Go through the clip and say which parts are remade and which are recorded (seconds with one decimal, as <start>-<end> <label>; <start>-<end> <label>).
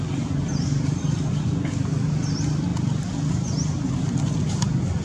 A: 0.0-5.0 recorded